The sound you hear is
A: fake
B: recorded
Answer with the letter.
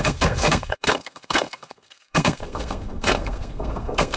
A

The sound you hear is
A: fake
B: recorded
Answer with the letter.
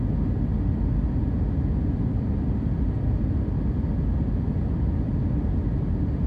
B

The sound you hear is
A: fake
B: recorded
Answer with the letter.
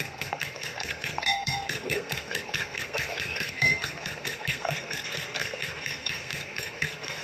A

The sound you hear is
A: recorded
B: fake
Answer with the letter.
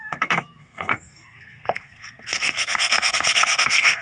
B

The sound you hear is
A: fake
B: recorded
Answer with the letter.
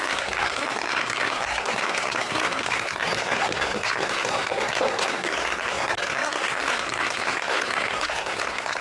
A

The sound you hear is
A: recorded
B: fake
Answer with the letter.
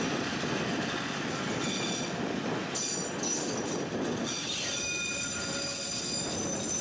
A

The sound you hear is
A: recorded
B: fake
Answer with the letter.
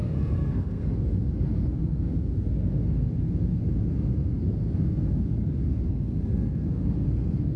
B